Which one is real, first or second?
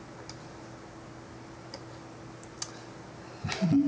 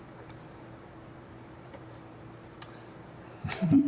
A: first